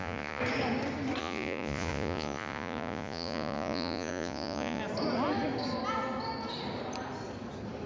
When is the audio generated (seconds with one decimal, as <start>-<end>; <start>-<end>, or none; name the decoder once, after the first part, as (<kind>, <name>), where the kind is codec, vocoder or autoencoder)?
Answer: 0.0-0.4 (vocoder, Vocos); 1.2-4.8